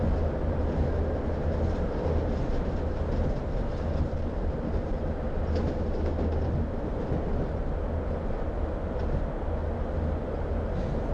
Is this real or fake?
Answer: real